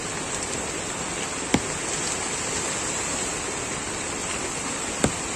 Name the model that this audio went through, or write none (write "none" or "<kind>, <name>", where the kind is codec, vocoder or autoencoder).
none